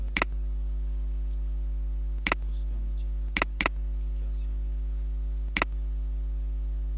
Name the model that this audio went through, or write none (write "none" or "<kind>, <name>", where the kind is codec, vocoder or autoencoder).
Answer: none